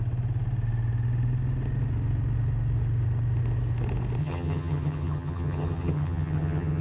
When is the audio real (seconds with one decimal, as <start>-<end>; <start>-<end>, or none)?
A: 0.0-4.2